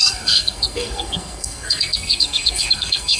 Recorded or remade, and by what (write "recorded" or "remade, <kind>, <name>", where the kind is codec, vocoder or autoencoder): remade, codec, SNAC